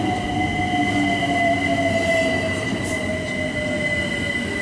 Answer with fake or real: real